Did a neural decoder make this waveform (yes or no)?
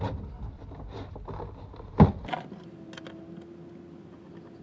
no